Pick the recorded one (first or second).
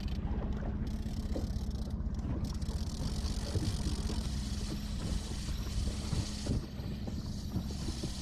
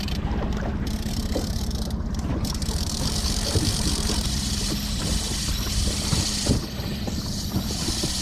first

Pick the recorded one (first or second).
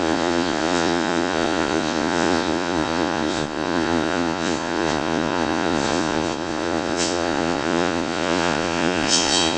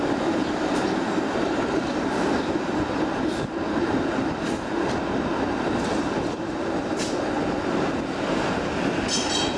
second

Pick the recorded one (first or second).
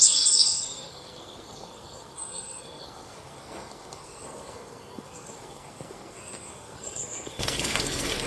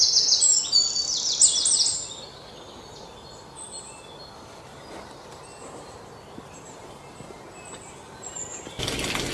second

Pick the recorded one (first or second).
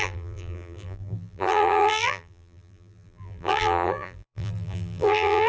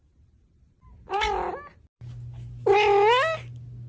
second